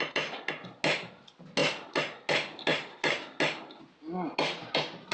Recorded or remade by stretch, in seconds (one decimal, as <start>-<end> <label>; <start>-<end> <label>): 0.0-5.1 recorded